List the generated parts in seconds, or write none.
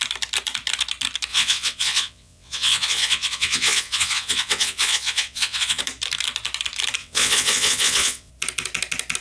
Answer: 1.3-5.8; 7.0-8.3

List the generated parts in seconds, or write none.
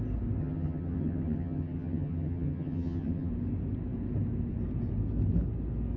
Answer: 0.4-3.3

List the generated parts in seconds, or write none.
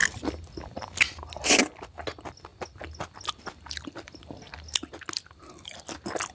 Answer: none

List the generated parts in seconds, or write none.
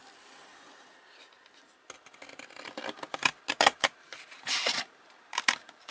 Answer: 3.5-5.9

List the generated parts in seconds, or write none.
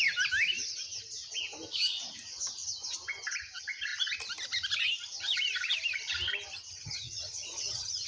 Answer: 6.7-8.1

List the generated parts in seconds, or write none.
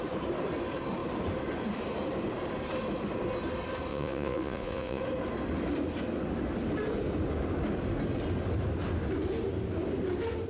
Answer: 3.9-5.0